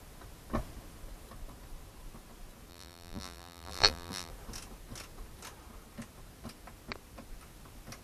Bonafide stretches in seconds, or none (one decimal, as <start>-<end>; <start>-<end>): 0.0-2.7; 4.3-8.0